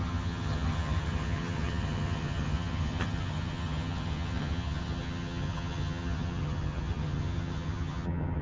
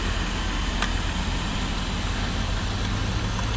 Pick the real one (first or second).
second